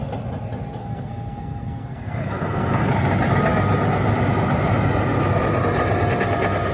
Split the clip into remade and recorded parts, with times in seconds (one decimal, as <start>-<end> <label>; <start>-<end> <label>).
0.0-0.8 recorded; 0.8-2.9 remade; 2.9-6.7 recorded